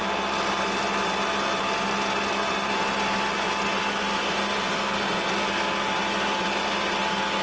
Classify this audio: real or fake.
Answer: real